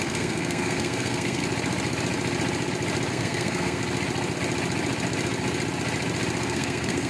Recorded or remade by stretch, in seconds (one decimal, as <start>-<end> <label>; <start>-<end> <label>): 0.0-1.4 remade; 1.4-3.1 recorded; 3.1-3.8 remade; 3.8-6.4 recorded; 6.4-7.1 remade